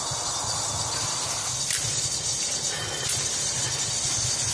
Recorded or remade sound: recorded